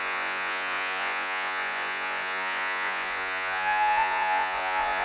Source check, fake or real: fake